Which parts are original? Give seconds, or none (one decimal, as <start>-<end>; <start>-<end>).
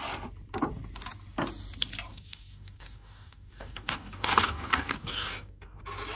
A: 0.0-2.1; 5.8-6.2